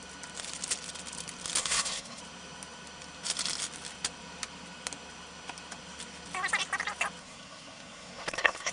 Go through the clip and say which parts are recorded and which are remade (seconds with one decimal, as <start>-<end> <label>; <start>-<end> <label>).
0.0-1.6 recorded; 1.6-2.2 remade; 2.2-7.2 recorded; 7.2-8.7 remade